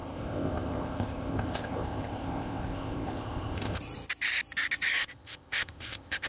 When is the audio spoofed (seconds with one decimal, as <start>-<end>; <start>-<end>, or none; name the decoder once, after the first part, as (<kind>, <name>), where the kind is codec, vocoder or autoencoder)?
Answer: 0.0-3.8 (codec, ZipCodec); 5.0-6.3